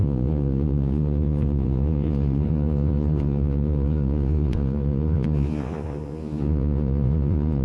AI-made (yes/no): yes